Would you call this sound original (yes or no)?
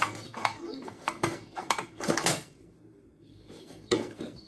no